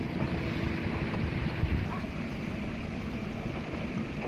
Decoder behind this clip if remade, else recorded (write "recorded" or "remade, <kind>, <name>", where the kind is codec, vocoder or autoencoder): recorded